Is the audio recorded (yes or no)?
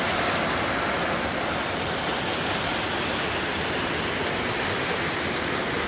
yes